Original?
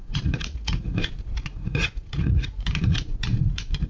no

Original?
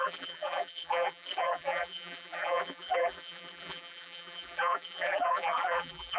no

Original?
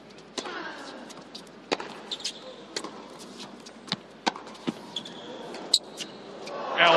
yes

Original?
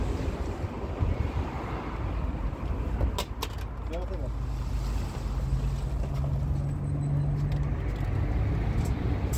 yes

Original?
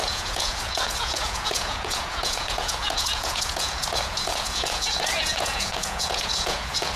no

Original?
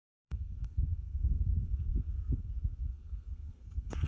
no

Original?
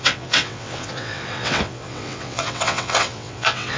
no